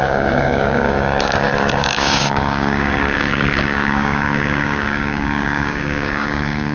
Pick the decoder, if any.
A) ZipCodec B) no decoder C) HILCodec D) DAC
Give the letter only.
D